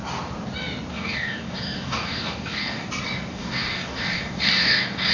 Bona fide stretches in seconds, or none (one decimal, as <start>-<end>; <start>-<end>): 0.0-0.9; 2.9-3.3